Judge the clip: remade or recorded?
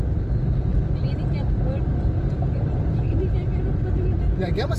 recorded